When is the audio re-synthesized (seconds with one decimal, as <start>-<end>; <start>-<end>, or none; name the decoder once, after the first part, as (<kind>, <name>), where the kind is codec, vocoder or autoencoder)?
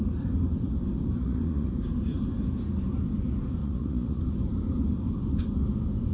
1.2-1.7 (vocoder, Vocos); 3.6-4.2